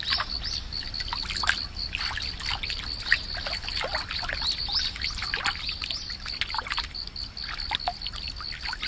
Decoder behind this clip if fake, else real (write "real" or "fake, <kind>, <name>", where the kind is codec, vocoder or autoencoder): real